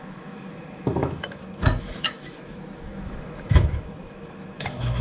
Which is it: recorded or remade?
remade